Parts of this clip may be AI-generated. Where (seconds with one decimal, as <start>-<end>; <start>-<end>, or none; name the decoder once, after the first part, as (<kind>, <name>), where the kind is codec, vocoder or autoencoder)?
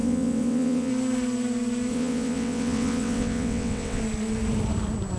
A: 0.0-0.9 (vocoder, WaveNeXt); 1.9-4.0